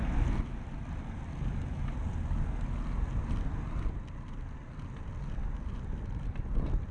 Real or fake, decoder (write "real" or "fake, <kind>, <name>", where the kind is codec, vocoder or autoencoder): real